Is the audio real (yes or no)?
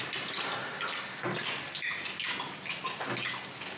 yes